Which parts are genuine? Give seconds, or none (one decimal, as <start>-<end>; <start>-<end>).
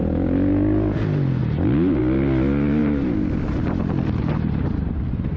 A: 0.0-5.4